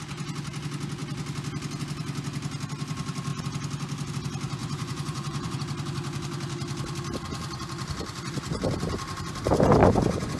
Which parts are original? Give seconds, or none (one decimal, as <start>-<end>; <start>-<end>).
0.0-4.6; 5.6-9.8